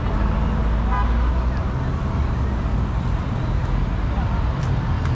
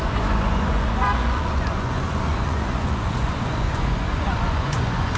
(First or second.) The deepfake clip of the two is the second